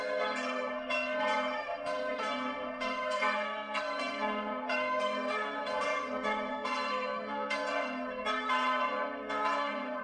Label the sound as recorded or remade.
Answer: remade